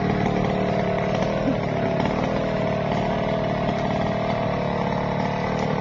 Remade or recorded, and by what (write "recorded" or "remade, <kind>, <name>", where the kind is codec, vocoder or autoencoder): recorded